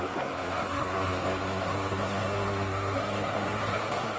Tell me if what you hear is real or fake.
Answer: fake